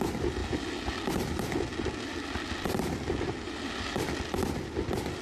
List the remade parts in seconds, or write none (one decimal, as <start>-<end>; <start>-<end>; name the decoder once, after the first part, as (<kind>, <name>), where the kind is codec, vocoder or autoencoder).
none